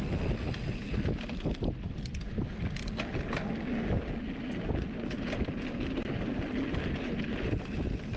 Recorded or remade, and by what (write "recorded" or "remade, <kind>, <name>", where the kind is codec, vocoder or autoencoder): recorded